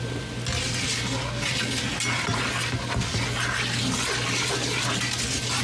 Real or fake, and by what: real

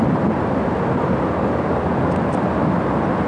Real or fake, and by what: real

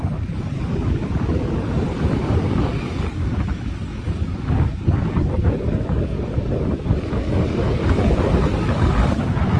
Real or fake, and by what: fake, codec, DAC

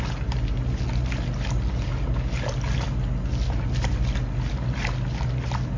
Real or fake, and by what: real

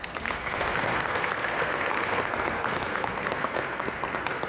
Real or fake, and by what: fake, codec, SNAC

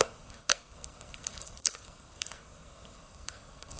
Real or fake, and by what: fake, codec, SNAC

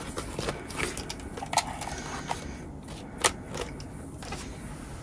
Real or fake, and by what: real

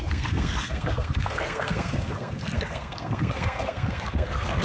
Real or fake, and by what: fake, codec, SNAC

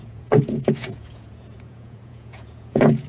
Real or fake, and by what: fake, vocoder, Vocos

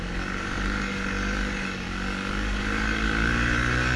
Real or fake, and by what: fake, codec, DAC